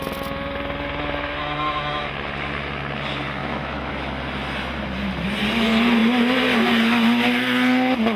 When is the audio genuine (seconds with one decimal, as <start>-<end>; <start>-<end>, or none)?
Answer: 0.0-1.4; 2.1-3.4; 3.9-8.2